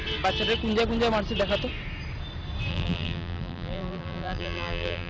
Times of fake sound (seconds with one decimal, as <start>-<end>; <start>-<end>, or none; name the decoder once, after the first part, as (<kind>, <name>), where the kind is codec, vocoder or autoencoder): 2.7-5.1 (vocoder, BigVGAN v2)